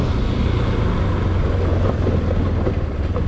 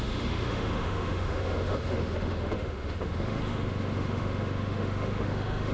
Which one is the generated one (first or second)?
second